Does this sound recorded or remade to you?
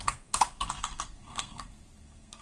remade